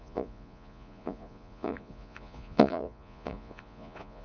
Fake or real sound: fake